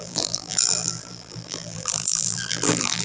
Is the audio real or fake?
fake